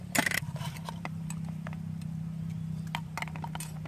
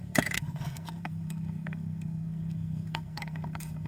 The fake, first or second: second